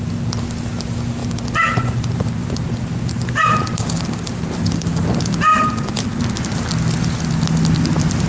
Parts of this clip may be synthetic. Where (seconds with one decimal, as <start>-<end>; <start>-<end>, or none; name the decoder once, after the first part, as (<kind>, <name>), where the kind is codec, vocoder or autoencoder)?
1.2-4.6 (vocoder, BigVGAN v2); 5.5-6.2